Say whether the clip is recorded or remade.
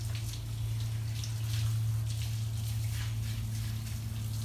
recorded